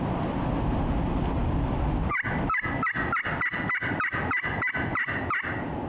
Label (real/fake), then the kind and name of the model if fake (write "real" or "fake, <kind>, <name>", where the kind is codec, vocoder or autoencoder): real